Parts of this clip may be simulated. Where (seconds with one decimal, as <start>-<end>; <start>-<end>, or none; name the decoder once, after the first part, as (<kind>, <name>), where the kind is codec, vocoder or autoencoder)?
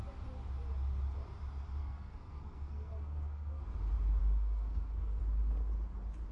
1.8-3.6 (codec, SNAC); 4.2-5.2